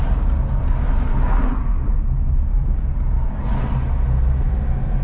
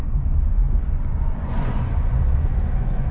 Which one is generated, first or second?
second